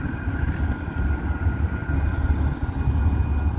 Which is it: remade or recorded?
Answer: recorded